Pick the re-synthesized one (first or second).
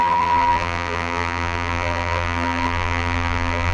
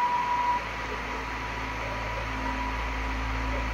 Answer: first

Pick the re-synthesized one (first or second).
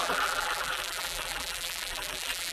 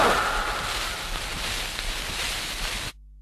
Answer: first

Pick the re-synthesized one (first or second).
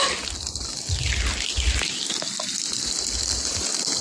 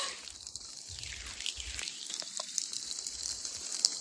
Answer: second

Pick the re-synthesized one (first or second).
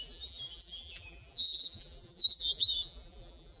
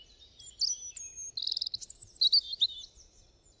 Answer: first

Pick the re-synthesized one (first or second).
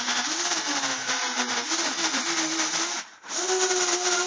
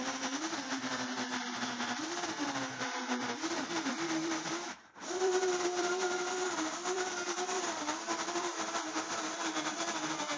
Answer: second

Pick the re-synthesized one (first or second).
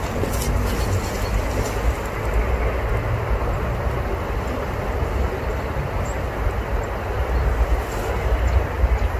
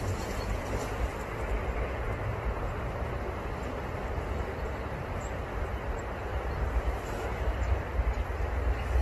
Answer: second